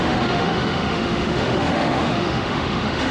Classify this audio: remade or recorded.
remade